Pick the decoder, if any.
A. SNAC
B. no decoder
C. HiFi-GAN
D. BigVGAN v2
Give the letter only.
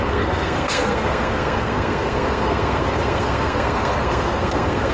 A